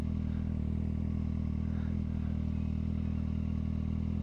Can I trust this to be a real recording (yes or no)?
yes